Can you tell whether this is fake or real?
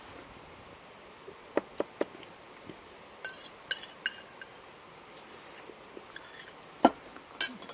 real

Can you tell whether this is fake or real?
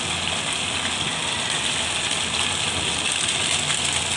real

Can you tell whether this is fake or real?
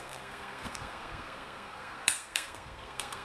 fake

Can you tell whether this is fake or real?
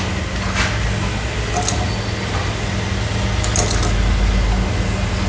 real